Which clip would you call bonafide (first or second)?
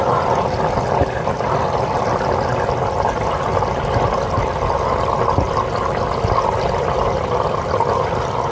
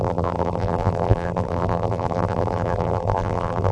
first